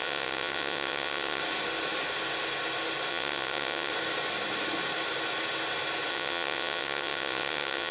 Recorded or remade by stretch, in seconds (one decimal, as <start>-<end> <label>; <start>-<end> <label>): 0.0-1.4 remade; 1.4-3.1 recorded; 3.1-3.9 remade; 3.9-6.1 recorded; 6.1-7.9 remade